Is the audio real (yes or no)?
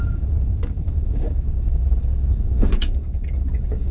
no